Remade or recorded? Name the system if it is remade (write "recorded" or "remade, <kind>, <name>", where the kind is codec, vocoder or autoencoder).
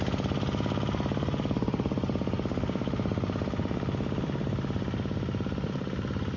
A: recorded